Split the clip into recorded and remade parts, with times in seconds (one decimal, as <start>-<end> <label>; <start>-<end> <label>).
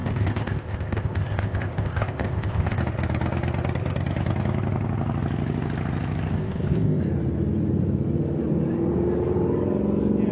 0.0-2.8 remade; 2.8-6.4 recorded; 6.4-7.0 remade; 7.0-10.3 recorded